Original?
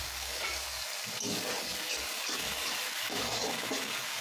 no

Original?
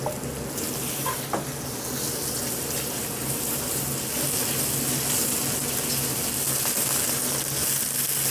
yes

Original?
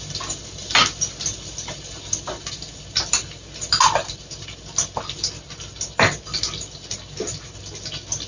yes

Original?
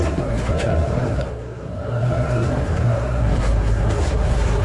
no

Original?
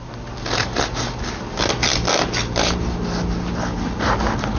yes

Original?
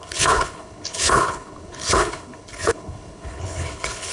no